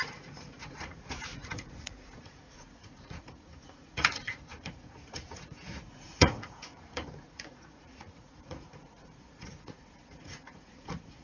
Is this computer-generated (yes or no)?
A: yes